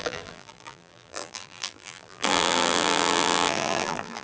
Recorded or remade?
remade